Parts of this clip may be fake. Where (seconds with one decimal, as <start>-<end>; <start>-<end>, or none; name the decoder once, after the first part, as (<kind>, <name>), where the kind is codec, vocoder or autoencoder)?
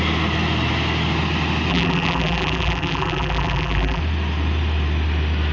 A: 1.7-4.0 (vocoder, BigVGAN v2)